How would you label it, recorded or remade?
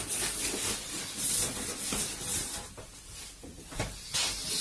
recorded